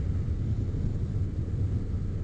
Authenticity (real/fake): real